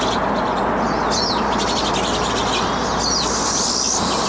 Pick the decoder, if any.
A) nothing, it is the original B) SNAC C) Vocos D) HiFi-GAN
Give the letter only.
A